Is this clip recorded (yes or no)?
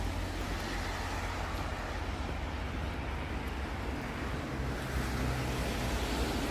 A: yes